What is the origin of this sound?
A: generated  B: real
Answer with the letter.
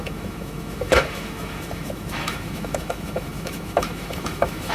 A